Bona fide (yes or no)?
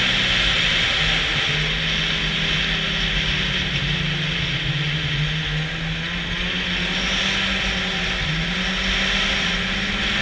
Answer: yes